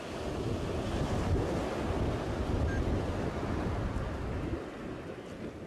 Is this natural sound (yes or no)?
yes